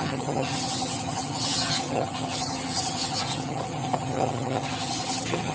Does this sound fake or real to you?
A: fake